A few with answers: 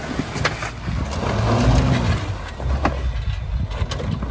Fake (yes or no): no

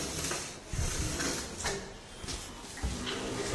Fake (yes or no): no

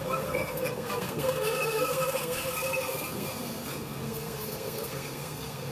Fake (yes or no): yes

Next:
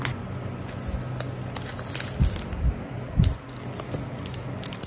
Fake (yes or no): no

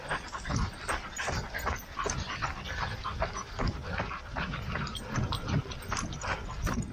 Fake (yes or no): no